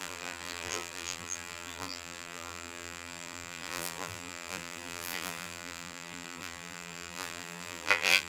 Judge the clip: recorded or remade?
remade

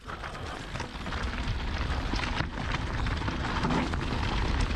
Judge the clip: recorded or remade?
recorded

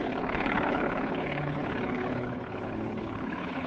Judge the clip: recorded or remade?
remade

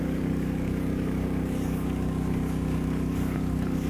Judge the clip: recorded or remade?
remade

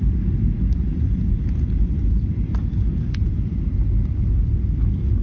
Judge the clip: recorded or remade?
recorded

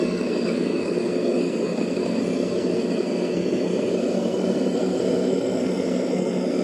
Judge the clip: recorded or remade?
remade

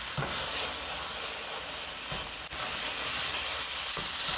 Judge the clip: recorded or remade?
recorded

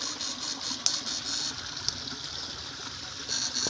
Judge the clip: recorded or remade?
recorded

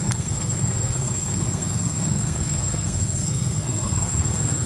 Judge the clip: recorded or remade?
remade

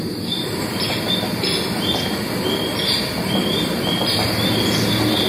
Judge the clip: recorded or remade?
recorded